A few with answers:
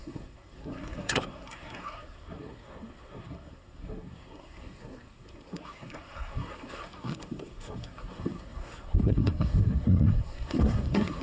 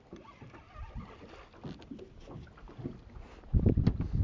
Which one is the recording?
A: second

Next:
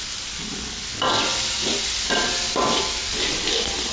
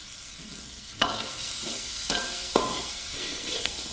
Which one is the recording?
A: first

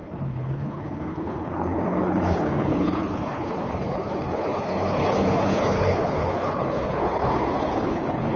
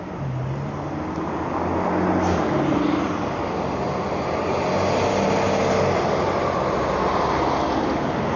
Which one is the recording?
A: second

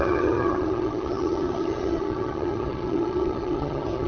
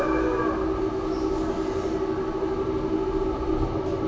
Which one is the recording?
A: second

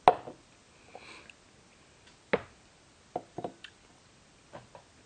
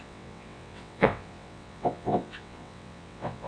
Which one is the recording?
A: first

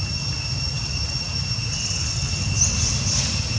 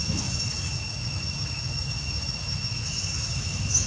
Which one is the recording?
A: first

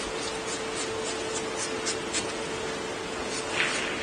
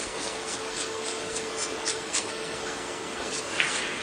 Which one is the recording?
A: first